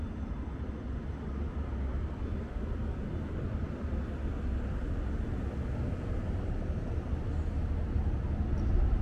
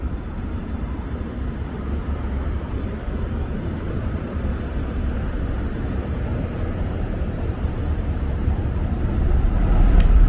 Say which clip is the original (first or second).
first